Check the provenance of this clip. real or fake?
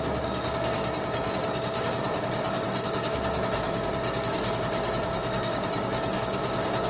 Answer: fake